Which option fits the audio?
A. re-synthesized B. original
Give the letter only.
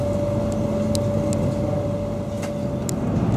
B